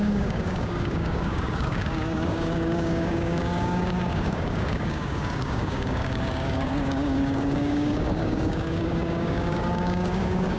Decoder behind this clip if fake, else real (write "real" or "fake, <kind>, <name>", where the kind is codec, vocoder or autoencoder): fake, codec, DAC